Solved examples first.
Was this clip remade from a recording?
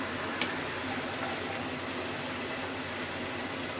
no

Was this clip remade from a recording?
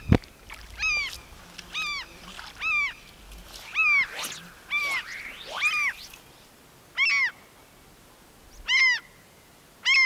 no